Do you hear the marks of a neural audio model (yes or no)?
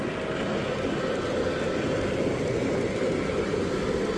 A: no